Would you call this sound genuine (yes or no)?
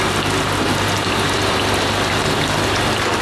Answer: yes